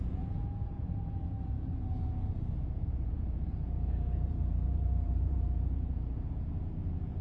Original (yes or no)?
no